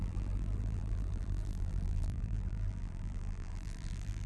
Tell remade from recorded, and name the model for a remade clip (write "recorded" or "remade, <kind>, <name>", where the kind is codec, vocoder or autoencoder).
remade, vocoder, BigVGAN v2